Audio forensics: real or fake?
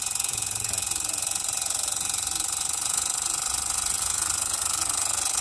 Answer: fake